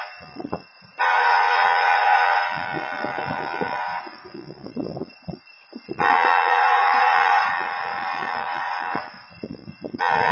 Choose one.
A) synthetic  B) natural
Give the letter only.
A